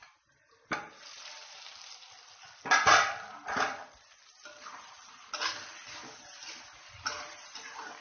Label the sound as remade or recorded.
recorded